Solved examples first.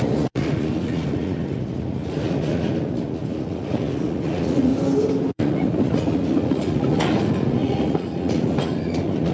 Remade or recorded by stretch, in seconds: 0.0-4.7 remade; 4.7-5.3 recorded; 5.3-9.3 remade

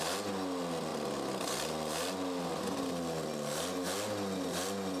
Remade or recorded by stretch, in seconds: 0.0-5.0 recorded

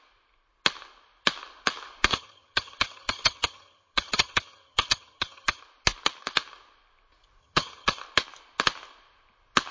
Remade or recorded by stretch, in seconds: 0.0-2.1 recorded; 2.1-5.6 remade; 5.6-7.4 recorded; 7.4-8.0 remade; 8.0-9.7 recorded